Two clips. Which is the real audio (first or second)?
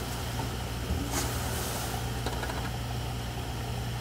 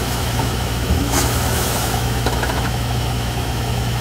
first